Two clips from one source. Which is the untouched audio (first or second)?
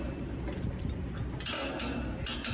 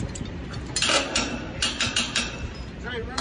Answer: first